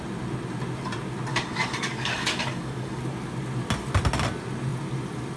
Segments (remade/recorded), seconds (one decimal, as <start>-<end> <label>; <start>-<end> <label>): 0.0-1.3 recorded; 1.3-3.0 remade; 3.0-5.4 recorded